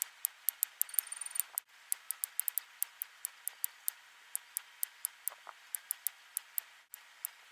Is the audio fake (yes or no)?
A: no